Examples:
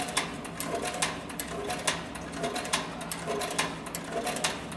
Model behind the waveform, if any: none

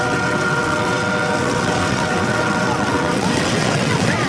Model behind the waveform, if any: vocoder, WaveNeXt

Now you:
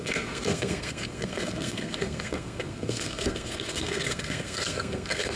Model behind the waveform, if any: codec, SNAC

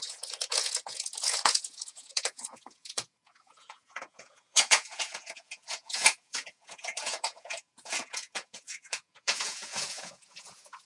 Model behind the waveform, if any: vocoder, Vocos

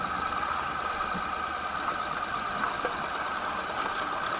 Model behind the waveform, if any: none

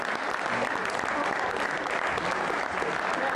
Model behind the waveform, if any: none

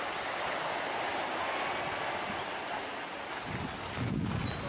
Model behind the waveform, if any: none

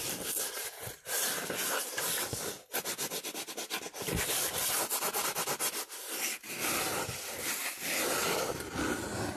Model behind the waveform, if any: none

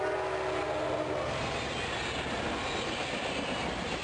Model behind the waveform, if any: none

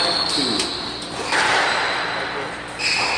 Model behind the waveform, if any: none